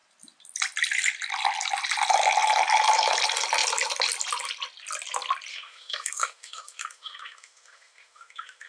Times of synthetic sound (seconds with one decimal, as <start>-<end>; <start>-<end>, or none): 5.5-8.7